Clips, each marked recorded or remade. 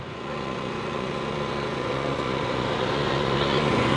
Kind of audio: remade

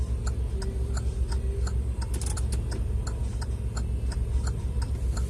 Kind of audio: recorded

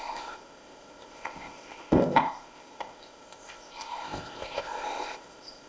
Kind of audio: remade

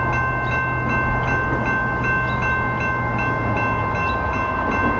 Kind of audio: recorded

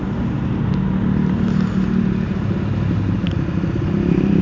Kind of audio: recorded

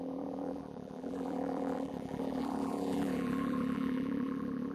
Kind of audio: remade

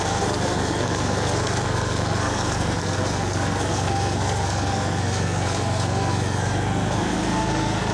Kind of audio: remade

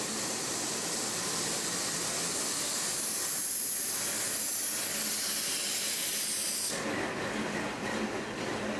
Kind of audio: recorded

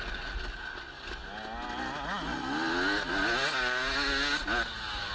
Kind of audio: recorded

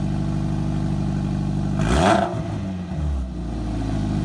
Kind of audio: recorded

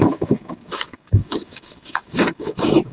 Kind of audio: remade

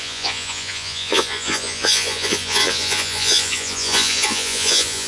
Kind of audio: remade